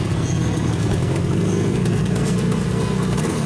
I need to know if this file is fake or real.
fake